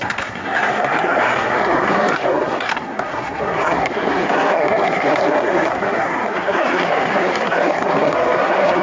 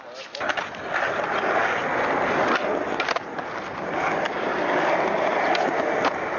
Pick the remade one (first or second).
first